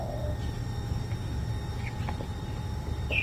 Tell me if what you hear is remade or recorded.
recorded